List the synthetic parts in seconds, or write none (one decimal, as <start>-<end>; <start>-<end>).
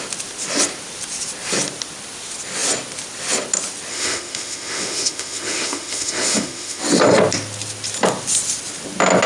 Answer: 3.9-6.8